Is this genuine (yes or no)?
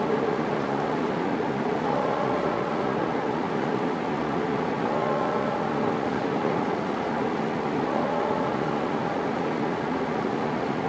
no